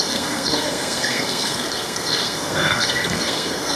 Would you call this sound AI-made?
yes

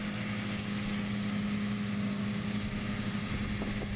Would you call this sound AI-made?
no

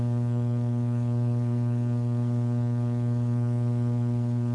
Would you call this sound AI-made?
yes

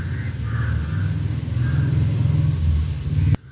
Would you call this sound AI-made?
no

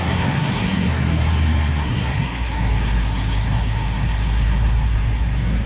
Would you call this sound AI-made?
yes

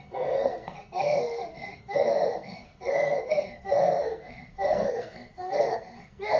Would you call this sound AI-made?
yes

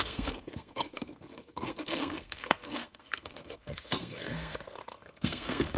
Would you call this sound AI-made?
yes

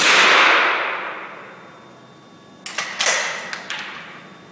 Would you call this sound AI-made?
no